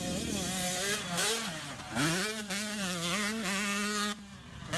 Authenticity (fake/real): real